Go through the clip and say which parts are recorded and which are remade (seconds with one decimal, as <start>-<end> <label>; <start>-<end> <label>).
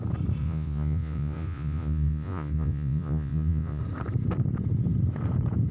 0.0-0.4 recorded; 0.4-3.8 remade; 3.8-5.7 recorded